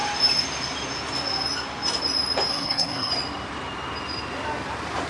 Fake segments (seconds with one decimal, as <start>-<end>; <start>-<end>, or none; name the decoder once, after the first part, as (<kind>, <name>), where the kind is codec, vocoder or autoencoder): 2.5-3.1 (codec, SNAC)